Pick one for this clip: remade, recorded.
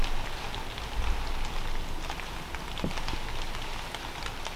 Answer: recorded